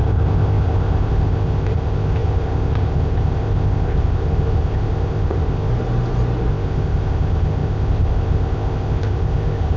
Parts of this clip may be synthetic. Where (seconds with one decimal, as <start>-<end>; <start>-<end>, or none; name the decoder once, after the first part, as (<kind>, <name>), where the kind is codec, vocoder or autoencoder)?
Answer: 0.0-5.7 (codec, ZipCodec); 6.5-9.8